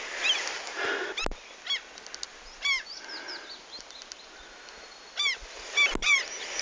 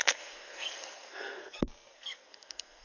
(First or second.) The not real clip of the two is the second